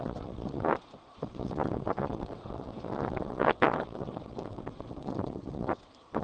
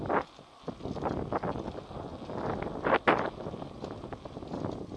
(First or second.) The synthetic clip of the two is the first